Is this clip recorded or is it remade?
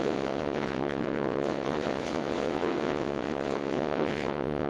remade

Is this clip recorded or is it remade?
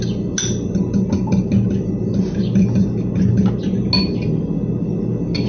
recorded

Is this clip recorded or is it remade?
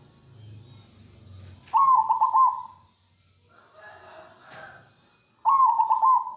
recorded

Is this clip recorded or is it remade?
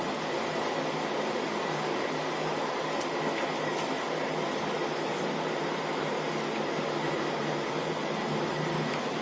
recorded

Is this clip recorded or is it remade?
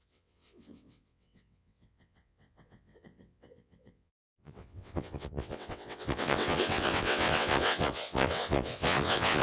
remade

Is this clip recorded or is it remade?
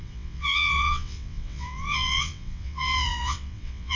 remade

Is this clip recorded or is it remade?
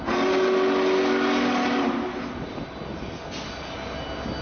recorded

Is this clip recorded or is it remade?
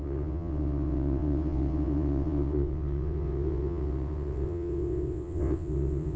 remade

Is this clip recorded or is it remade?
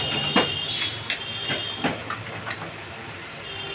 recorded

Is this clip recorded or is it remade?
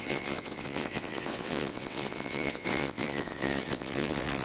remade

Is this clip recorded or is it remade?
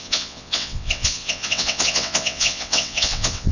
remade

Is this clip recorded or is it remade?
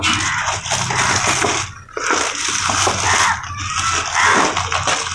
recorded